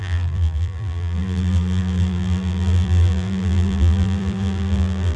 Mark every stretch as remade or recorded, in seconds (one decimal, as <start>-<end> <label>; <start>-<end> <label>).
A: 0.0-5.2 remade